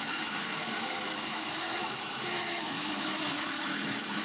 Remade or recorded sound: remade